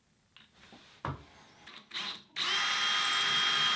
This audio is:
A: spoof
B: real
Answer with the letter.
B